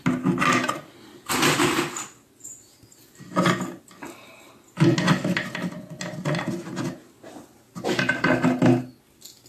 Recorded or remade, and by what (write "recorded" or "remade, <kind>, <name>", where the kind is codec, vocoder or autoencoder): recorded